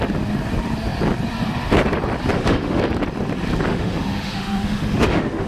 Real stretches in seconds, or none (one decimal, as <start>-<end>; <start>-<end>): 0.0-2.3; 2.8-3.7